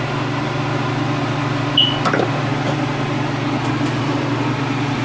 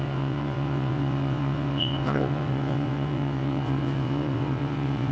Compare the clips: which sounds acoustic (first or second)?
first